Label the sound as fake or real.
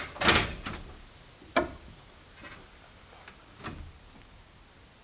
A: real